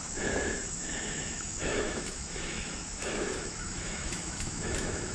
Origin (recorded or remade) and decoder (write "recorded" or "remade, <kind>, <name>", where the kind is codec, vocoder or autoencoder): remade, autoencoder, DAC-VAE